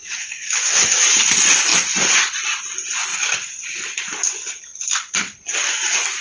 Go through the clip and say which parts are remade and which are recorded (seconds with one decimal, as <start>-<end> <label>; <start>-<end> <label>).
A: 0.0-1.0 remade; 1.0-6.2 recorded